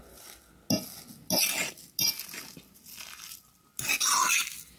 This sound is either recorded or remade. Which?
recorded